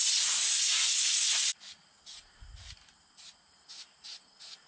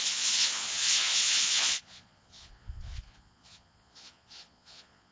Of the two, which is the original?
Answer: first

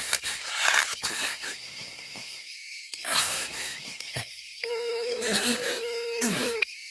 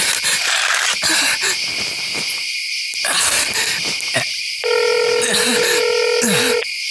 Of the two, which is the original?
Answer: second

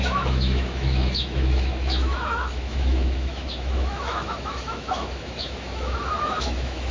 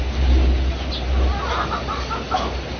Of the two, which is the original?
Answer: second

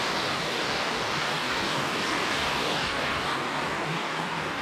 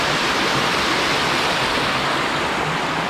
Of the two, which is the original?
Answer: second